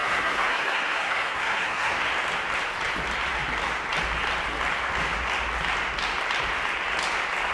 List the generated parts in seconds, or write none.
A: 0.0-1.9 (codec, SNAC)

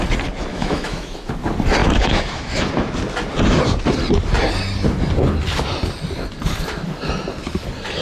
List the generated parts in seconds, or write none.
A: 0.5-1.3 (autoencoder, DAC-VAE); 1.8-2.7

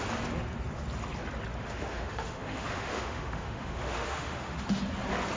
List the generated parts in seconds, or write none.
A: 1.6-4.8 (autoencoder, DAC-VAE)

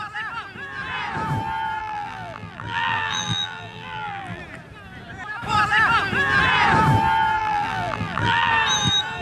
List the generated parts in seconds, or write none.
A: 1.8-4.4 (vocoder, BigVGAN v2); 7.4-8.5

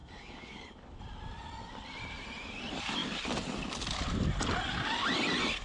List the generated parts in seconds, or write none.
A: 0.0-1.0 (codec, DAC)

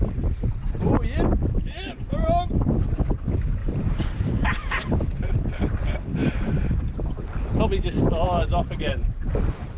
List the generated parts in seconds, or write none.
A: 3.6-5.1 (vocoder, BigVGAN v2)

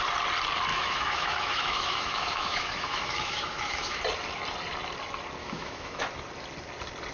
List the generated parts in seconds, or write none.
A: 0.7-4.0 (autoencoder, DAC-VAE); 5.4-6.0

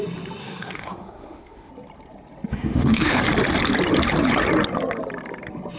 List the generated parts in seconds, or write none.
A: 0.4-1.7 (autoencoder, DAC-VAE); 2.5-3.2